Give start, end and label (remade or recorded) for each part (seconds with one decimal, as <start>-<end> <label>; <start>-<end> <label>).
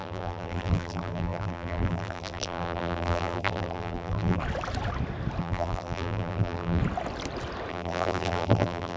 0.0-4.4 remade; 4.4-5.4 recorded; 5.4-6.8 remade; 6.8-7.7 recorded; 7.7-9.0 remade